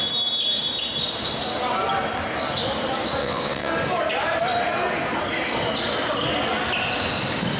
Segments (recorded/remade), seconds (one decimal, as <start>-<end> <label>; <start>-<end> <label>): 0.0-3.2 recorded; 3.2-3.7 remade; 3.7-7.6 recorded